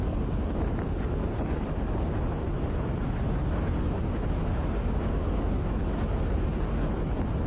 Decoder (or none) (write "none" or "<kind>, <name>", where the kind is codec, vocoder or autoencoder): none